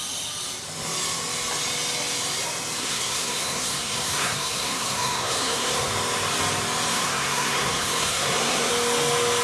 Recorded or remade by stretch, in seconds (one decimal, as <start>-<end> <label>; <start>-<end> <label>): 0.0-2.8 recorded; 2.8-5.9 remade; 5.9-6.9 recorded; 6.9-8.7 remade; 8.7-9.4 recorded

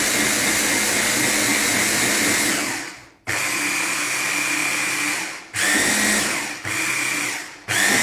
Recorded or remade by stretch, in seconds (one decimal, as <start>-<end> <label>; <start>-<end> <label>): 0.0-8.0 recorded

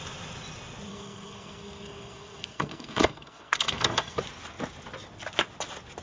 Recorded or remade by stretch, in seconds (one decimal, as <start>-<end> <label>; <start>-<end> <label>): 0.0-0.9 recorded; 0.9-4.2 remade; 4.2-6.0 recorded

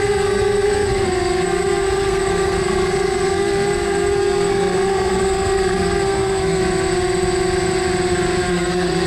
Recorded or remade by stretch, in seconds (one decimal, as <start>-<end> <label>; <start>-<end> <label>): 0.0-6.6 remade; 6.6-8.5 recorded; 8.5-9.1 remade

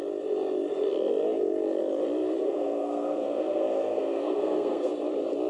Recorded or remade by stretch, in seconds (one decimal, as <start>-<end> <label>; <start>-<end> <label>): 0.0-2.4 recorded; 2.4-4.9 remade; 4.9-5.5 recorded